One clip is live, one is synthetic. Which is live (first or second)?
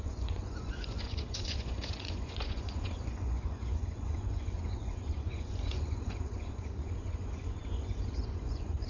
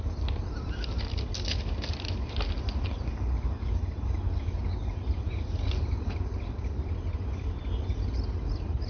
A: second